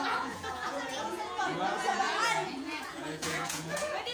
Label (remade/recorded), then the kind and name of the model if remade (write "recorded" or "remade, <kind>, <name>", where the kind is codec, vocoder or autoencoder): remade, vocoder, Vocos